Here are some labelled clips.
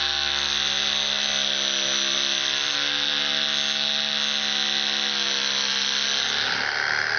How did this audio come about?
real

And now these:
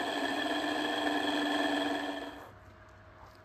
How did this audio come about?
real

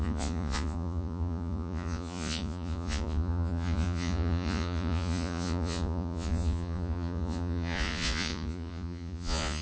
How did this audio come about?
fake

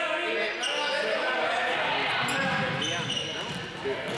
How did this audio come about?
real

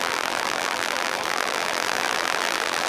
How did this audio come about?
fake